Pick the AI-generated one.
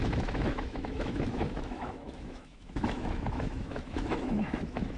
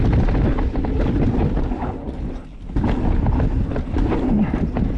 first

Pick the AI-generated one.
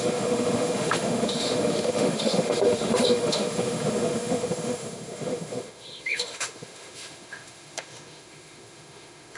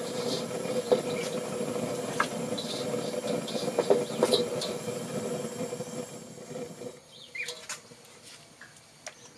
first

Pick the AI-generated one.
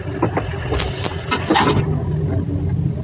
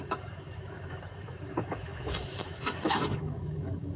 second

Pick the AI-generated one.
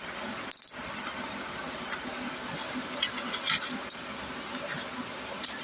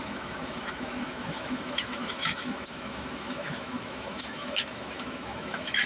second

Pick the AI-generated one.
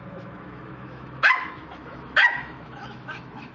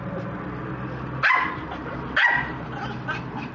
first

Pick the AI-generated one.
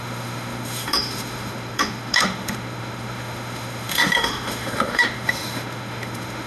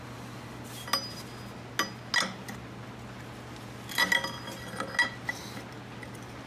first